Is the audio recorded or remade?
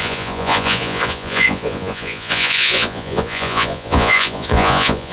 remade